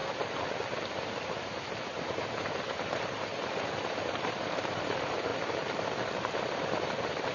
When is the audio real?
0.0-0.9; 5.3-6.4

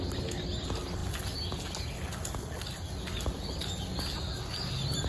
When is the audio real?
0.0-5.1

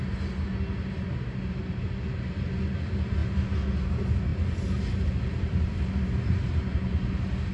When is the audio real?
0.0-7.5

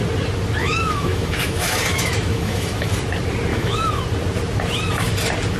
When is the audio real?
0.0-0.6; 2.9-3.5; 4.0-5.6